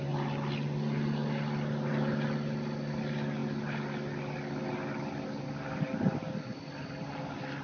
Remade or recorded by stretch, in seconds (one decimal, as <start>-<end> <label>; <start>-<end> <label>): 0.0-7.6 recorded